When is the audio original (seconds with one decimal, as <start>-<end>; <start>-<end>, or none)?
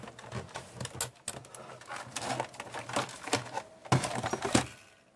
0.0-5.2